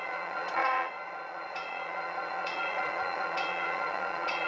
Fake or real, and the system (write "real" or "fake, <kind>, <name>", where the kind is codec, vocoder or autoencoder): fake, vocoder, Vocos